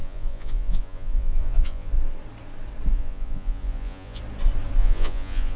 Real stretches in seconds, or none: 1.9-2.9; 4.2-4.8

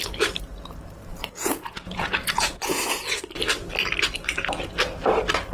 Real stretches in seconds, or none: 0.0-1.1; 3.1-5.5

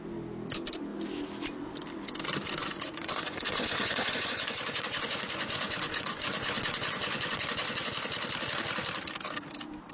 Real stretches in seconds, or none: 0.0-2.6; 7.9-9.9